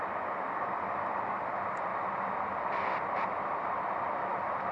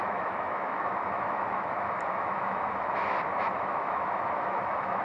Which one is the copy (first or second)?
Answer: second